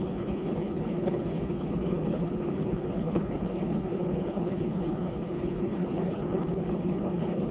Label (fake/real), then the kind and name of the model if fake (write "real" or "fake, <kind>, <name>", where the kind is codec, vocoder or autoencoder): fake, codec, HILCodec